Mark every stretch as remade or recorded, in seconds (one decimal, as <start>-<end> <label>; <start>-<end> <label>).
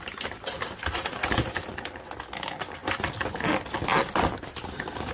0.0-5.1 recorded